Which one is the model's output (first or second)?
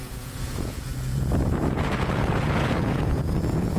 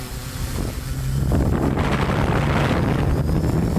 first